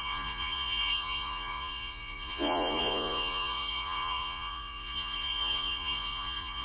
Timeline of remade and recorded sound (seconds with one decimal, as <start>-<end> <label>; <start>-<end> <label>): 0.0-6.6 remade